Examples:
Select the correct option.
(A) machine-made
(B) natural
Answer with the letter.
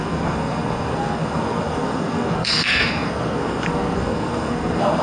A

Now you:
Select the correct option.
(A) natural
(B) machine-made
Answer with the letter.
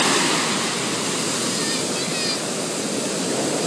A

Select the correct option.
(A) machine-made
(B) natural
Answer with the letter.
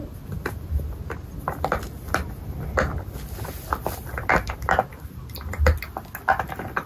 B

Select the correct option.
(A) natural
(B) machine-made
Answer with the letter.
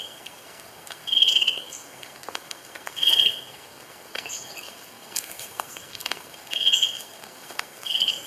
B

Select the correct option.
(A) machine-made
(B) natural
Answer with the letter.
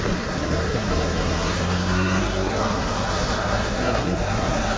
A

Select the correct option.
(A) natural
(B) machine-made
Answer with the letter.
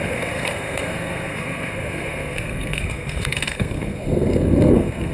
B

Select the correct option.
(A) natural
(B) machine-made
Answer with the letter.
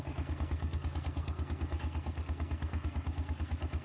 B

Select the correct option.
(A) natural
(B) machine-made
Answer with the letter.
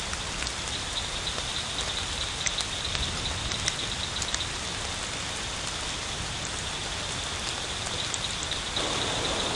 A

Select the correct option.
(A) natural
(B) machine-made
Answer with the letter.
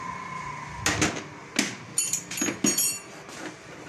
A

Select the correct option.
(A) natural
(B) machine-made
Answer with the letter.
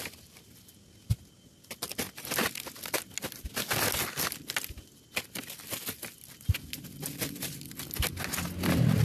A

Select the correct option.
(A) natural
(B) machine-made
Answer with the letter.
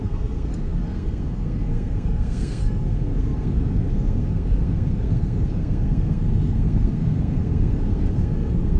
B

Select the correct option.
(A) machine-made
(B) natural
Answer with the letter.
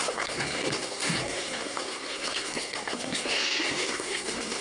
A